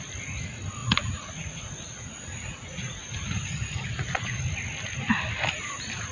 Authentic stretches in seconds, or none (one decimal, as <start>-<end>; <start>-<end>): 0.0-0.8; 4.4-6.1